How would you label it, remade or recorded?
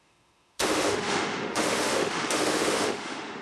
remade